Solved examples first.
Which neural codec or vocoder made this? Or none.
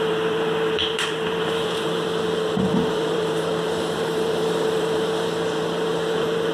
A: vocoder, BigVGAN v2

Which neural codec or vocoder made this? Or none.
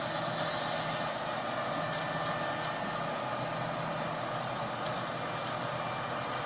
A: none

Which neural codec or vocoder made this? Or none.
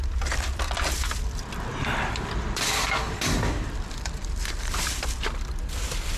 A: vocoder, BigVGAN v2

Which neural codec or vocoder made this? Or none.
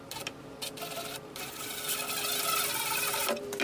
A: none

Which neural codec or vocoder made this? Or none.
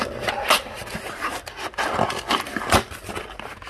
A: none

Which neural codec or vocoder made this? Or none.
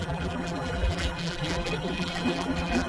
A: vocoder, BigVGAN v2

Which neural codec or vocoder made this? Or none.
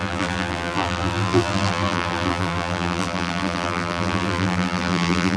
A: vocoder, BigVGAN v2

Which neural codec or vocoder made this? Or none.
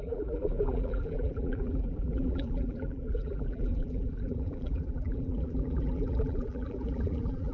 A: vocoder, BigVGAN v2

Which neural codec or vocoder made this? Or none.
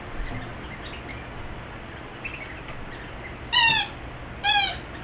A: none